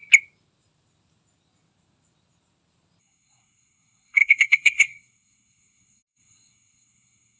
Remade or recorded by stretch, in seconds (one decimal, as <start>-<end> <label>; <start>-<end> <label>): 0.0-3.0 recorded; 3.0-7.4 remade